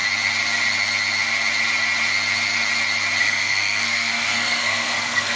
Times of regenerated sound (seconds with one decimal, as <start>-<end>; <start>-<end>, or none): 3.2-5.4